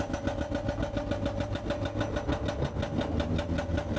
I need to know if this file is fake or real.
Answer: real